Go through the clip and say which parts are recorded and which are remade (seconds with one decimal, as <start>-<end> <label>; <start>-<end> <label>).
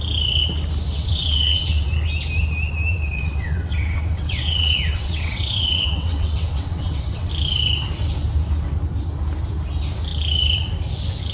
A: 0.0-0.9 recorded; 0.9-1.9 remade; 1.9-2.9 recorded; 2.9-7.3 remade; 7.3-11.3 recorded